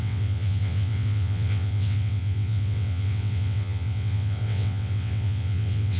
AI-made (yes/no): yes